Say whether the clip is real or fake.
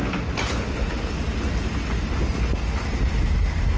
real